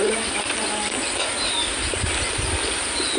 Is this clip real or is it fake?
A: real